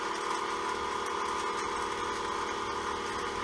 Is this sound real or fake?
real